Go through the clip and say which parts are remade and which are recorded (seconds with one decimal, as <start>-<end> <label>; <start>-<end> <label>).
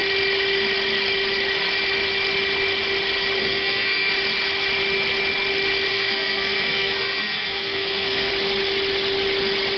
0.0-3.4 recorded; 3.4-4.1 remade; 4.1-5.9 recorded; 5.9-8.3 remade; 8.3-9.8 recorded